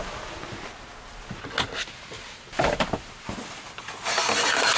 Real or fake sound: real